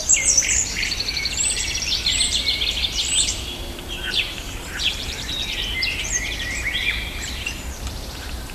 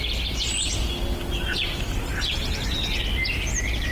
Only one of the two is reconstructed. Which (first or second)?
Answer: first